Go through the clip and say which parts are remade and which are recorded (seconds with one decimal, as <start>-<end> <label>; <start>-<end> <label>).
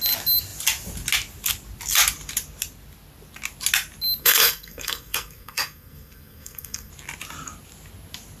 0.0-4.2 recorded; 4.2-6.9 remade; 6.9-8.4 recorded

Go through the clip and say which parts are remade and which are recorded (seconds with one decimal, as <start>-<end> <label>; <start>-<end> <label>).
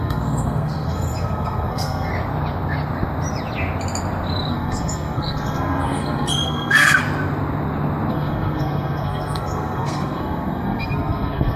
0.0-2.1 remade; 2.1-4.5 recorded; 4.5-7.0 remade; 7.0-8.1 recorded; 8.1-11.6 remade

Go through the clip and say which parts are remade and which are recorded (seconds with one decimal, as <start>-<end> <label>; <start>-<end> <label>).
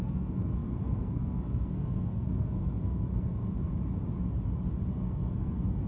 0.0-3.7 remade; 3.7-4.9 recorded; 4.9-5.9 remade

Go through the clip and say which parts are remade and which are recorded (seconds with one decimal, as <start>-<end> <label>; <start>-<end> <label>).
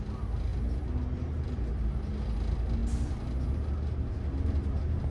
0.0-5.1 recorded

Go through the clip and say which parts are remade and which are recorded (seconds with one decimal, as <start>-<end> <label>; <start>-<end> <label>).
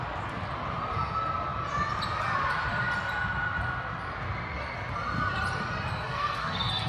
0.0-6.1 recorded; 6.1-6.9 remade